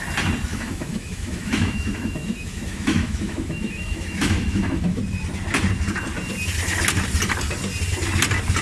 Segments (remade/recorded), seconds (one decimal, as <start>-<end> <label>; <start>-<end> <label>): 0.0-0.5 recorded; 0.5-5.0 remade; 5.0-8.6 recorded